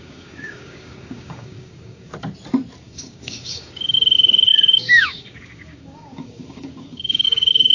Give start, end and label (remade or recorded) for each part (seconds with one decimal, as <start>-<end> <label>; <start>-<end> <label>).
0.0-2.1 remade; 2.1-2.8 recorded; 2.8-7.7 remade